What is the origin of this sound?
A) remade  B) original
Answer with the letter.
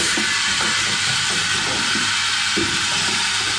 A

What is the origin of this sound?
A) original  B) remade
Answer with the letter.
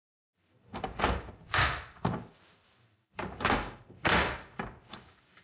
B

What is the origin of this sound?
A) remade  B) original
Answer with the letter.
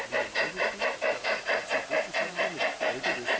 B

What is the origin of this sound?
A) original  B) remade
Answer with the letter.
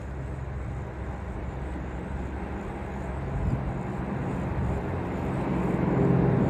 A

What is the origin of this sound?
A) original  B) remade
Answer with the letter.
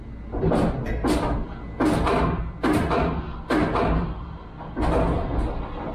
A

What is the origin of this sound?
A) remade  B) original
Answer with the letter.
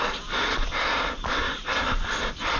B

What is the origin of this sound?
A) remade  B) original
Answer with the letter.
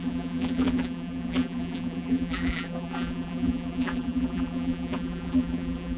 A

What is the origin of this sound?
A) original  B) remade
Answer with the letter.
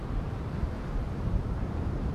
B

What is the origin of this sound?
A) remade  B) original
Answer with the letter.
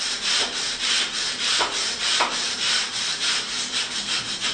A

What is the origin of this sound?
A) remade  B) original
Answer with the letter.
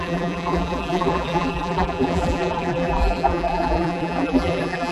A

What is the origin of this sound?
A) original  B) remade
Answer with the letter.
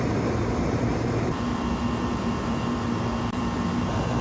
B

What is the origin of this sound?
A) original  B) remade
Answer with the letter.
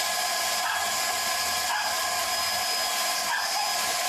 A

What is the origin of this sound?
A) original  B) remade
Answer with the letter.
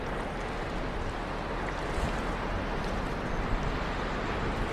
A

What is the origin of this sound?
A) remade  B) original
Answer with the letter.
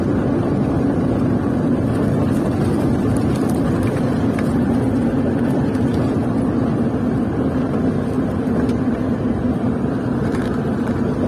A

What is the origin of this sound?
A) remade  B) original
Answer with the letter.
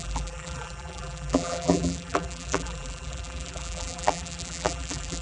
A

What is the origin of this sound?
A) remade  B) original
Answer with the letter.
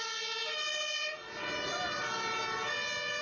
B